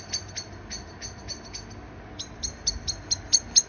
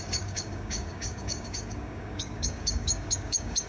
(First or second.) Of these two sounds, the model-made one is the second